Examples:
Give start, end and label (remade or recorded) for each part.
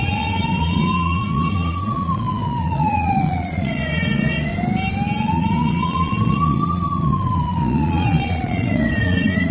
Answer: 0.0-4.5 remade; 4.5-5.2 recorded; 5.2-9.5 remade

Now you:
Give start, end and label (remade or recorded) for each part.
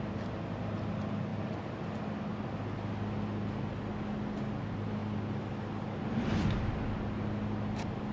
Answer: 0.0-8.1 recorded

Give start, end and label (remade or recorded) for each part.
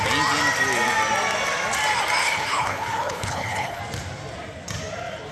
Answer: 0.0-2.2 recorded; 2.2-3.8 remade; 3.8-5.3 recorded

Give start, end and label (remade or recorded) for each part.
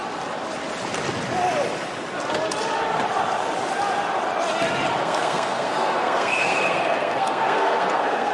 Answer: 0.0-5.0 recorded; 5.0-8.3 remade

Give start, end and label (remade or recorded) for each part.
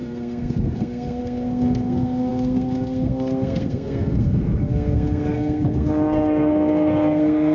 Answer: 0.0-7.5 remade